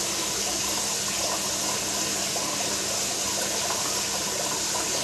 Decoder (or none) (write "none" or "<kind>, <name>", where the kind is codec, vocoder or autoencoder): none